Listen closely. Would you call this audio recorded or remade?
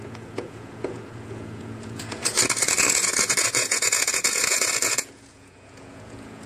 remade